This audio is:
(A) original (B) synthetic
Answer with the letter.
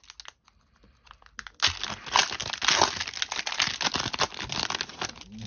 A